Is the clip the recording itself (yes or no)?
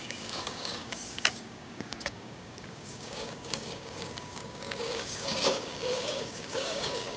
no